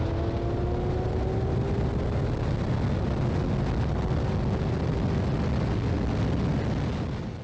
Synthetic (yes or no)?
no